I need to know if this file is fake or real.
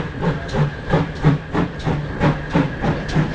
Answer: real